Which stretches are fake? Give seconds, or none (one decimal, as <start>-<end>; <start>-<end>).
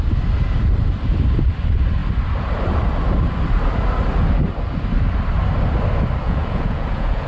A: 6.2-7.3